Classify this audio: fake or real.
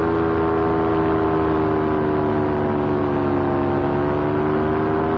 real